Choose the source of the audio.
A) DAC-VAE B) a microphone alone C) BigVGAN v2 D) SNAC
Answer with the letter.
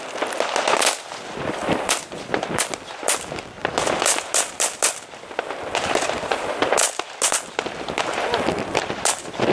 B